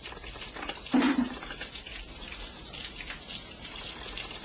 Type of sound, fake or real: fake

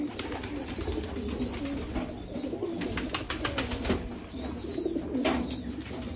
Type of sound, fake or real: real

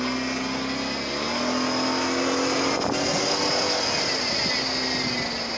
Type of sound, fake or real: real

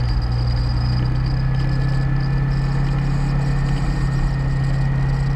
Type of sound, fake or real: real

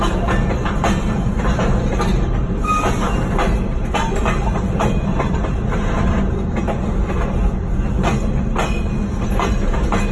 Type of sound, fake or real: real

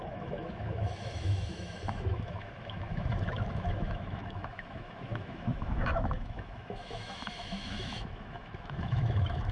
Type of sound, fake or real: fake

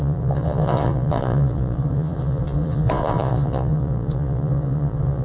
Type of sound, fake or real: fake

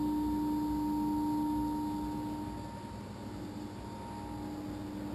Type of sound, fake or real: real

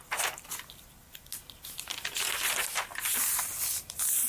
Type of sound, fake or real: real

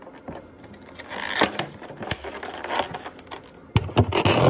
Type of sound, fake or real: real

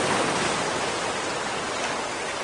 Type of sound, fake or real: real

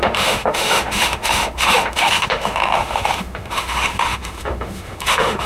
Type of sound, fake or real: fake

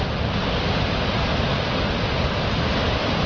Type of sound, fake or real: real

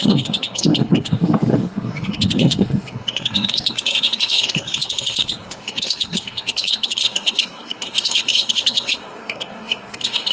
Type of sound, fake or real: fake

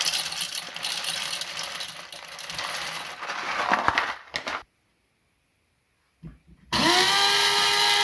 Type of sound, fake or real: real